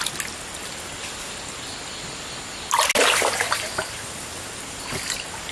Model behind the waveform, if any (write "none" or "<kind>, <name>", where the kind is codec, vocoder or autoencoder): none